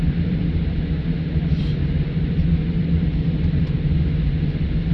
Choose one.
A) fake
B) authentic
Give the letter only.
A